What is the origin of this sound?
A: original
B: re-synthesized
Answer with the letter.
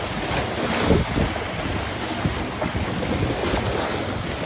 A